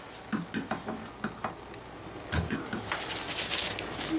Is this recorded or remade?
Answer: recorded